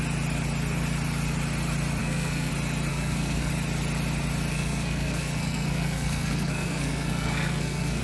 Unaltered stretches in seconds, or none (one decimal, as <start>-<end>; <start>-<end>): 0.0-2.0; 2.5-2.9; 3.5-4.5